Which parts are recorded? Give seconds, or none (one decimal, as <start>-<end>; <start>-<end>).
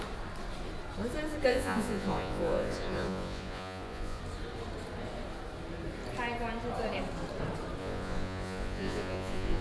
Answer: 0.0-1.5; 4.2-7.8